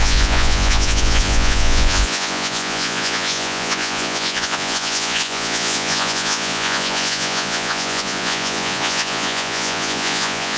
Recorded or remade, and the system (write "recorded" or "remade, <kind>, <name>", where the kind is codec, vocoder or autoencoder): remade, vocoder, Vocos